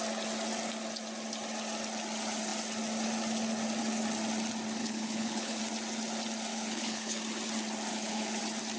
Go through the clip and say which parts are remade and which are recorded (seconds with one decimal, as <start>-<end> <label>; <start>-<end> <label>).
0.0-4.8 recorded; 4.8-5.6 remade; 5.6-6.5 recorded; 6.5-7.2 remade; 7.2-7.9 recorded; 7.9-8.4 remade; 8.4-8.8 recorded